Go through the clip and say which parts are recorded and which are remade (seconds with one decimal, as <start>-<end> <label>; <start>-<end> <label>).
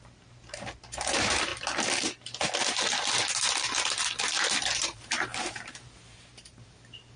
0.0-1.5 remade; 1.5-4.6 recorded; 4.6-7.2 remade